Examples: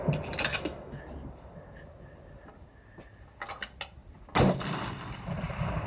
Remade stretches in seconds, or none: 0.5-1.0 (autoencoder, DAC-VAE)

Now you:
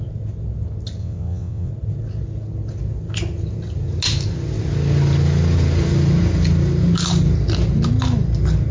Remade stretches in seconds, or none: 1.0-1.7 (vocoder, WaveNeXt)

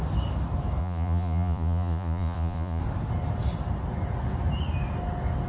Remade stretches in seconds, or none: 0.8-2.8 (vocoder, Vocos)